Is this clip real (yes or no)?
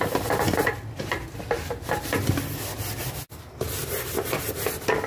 yes